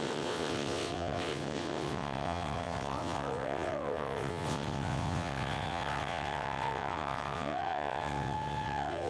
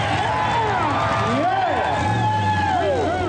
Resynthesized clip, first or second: first